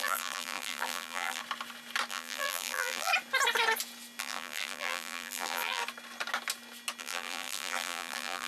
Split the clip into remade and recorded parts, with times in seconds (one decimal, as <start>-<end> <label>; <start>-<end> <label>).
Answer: 0.0-1.4 remade; 1.4-2.1 recorded; 2.1-3.1 remade; 3.1-4.2 recorded; 4.2-5.8 remade; 5.8-7.0 recorded; 7.0-8.5 remade